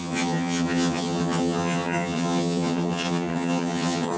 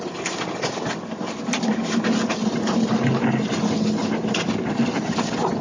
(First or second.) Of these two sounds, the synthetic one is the first